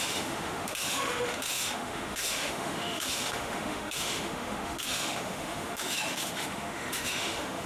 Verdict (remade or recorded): remade